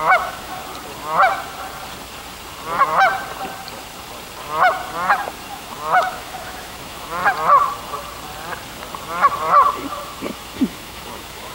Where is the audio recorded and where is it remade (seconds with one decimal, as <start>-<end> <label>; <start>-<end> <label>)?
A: 0.0-0.6 remade; 0.6-5.5 recorded; 5.5-7.2 remade; 7.2-9.7 recorded; 9.7-11.5 remade